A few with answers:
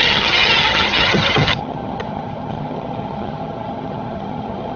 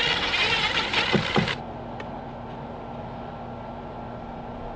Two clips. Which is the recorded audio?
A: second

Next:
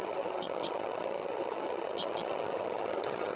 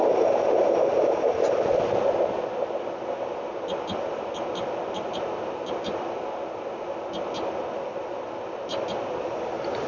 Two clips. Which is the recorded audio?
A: second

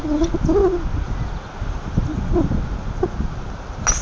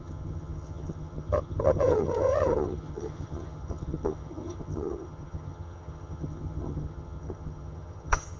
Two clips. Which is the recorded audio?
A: first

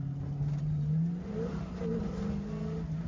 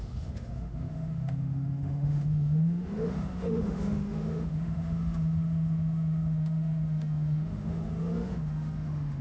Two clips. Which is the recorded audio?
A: first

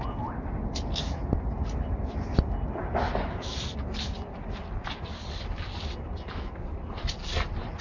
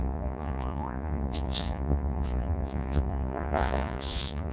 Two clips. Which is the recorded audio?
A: first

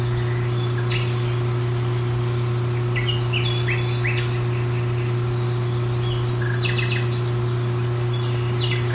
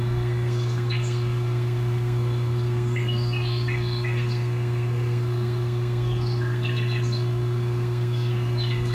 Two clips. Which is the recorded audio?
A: first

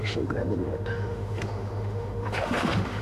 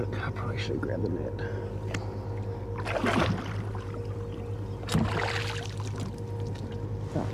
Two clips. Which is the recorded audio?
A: second